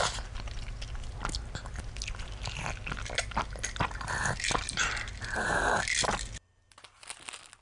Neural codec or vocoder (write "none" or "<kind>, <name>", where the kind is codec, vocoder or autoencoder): none